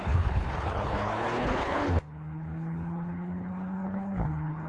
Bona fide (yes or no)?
no